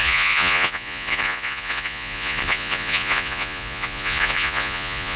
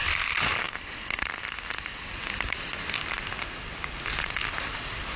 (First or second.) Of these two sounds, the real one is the second